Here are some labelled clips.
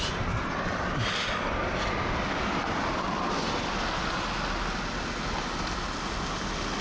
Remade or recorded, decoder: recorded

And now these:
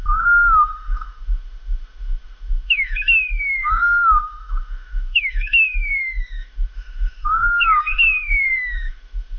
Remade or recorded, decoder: remade, autoencoder, DAC-VAE